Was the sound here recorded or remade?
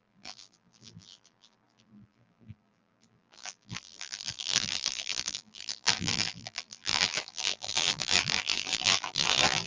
remade